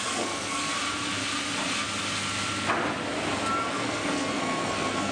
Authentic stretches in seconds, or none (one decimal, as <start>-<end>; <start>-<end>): 0.7-3.7